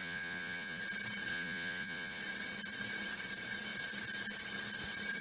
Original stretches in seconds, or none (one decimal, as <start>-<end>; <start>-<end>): 0.8-1.3; 2.2-5.2